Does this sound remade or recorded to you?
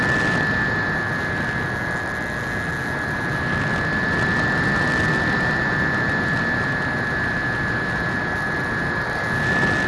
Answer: recorded